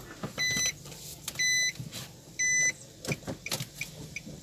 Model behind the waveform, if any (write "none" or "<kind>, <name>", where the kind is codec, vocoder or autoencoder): none